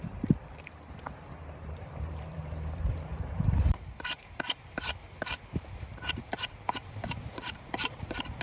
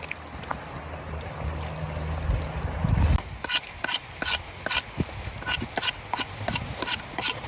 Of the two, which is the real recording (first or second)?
second